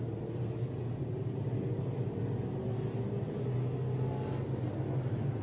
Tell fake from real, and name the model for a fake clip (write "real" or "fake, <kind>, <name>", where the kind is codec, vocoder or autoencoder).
real